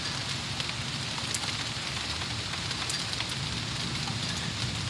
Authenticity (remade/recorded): recorded